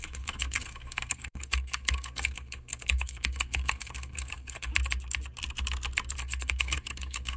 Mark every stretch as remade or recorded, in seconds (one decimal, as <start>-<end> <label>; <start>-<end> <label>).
0.0-4.7 remade; 4.7-6.2 recorded; 6.2-7.4 remade